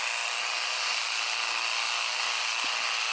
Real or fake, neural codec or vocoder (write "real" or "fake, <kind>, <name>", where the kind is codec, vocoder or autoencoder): real